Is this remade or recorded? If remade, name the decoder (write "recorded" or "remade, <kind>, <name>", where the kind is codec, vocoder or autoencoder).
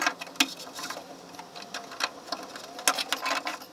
recorded